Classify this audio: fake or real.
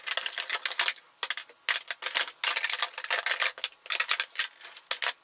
real